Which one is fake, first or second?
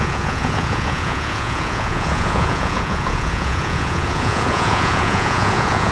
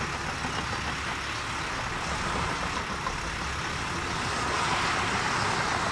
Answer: first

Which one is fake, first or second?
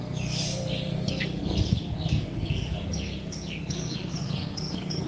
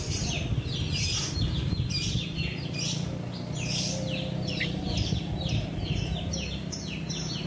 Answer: first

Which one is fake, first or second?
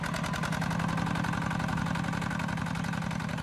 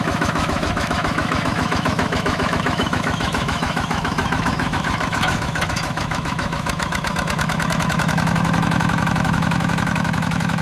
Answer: second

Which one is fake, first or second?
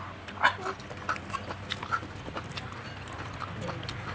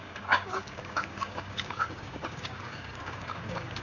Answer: second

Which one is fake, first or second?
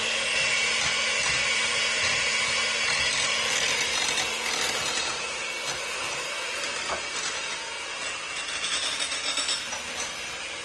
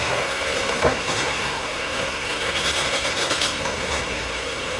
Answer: second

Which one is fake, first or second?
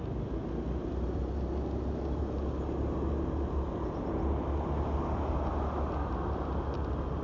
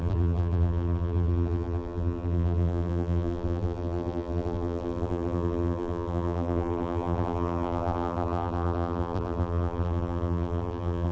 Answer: second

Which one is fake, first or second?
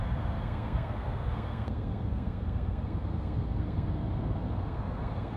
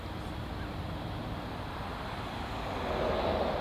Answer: first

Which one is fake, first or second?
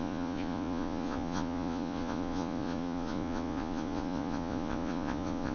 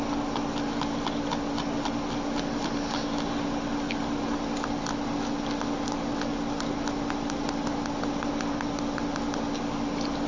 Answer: first